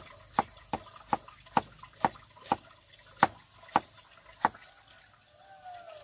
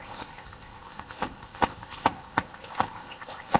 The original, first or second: first